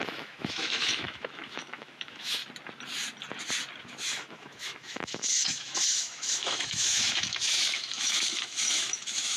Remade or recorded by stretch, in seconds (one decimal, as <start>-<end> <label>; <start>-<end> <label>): 0.0-2.4 remade; 2.4-3.8 recorded; 3.8-9.4 remade